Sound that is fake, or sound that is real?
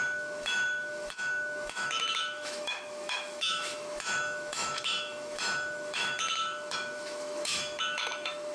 fake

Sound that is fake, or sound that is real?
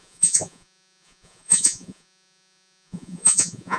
fake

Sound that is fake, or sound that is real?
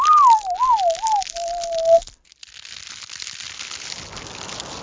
real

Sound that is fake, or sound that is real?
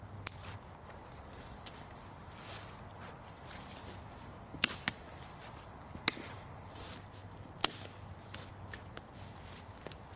real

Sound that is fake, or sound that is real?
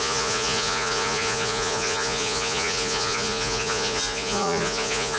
fake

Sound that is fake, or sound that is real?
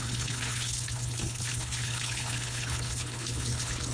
fake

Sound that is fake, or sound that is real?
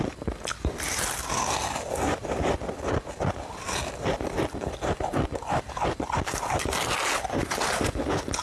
real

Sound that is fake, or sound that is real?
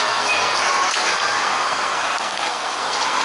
fake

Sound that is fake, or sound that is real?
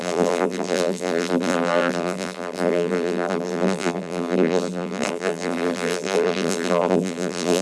fake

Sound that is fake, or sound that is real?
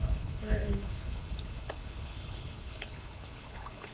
fake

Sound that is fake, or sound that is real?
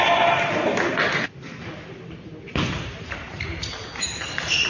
real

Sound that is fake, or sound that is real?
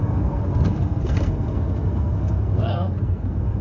fake